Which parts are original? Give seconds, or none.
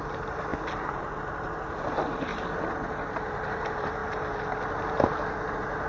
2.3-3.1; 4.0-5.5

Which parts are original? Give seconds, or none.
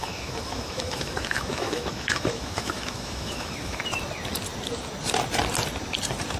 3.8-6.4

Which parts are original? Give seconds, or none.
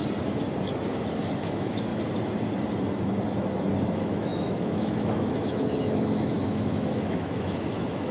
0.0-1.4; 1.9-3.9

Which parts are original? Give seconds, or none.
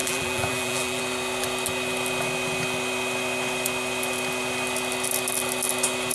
1.0-6.1